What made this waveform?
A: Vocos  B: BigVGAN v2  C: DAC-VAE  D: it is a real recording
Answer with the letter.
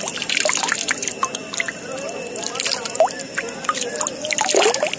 D